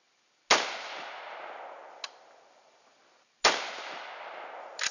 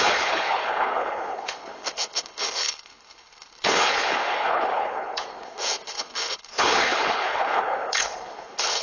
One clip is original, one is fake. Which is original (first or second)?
first